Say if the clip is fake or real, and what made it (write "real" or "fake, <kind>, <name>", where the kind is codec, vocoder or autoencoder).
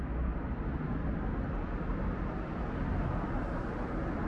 real